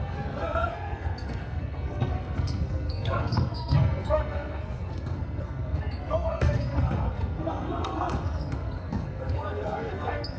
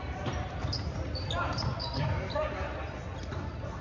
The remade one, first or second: first